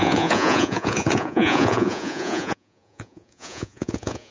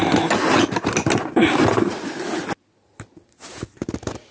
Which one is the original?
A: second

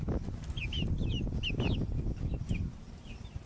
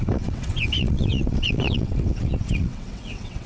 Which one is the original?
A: first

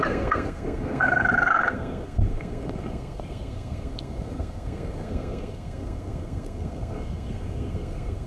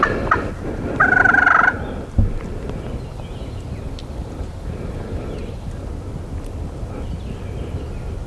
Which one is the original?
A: second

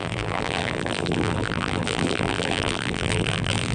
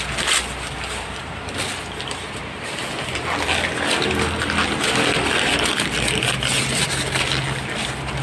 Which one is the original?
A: second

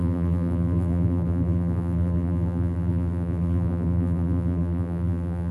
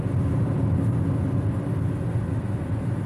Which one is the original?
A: second